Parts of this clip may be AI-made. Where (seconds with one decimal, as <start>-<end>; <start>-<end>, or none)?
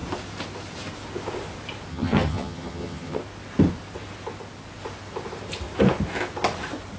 1.9-3.2